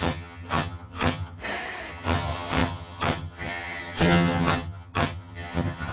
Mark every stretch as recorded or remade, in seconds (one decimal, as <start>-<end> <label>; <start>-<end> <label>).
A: 0.0-1.4 remade; 1.4-1.9 recorded; 1.9-5.9 remade